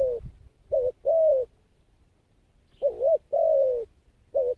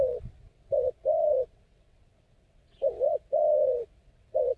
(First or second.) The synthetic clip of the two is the second